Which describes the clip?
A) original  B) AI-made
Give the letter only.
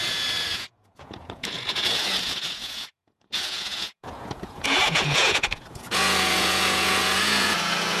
B